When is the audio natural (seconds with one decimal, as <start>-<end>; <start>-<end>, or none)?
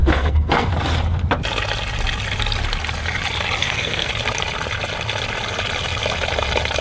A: 0.7-3.6; 4.1-6.8